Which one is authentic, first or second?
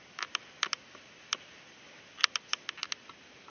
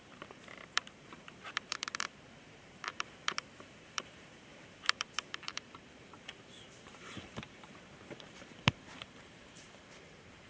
first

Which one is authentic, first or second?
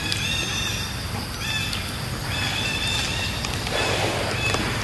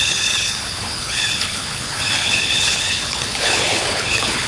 first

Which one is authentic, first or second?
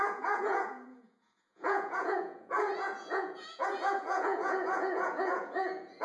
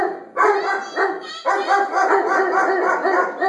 second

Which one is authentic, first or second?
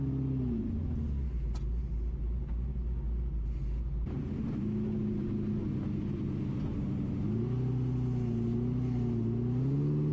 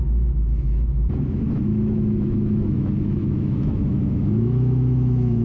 first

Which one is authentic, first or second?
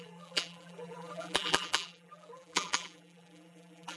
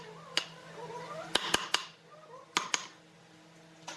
second